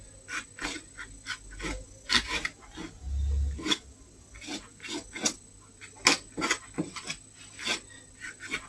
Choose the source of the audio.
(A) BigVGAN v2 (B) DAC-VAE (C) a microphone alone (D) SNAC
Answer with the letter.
C